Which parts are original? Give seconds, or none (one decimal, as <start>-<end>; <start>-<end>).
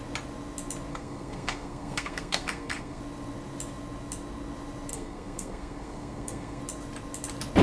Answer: 0.0-0.9; 3.0-4.9; 6.6-7.6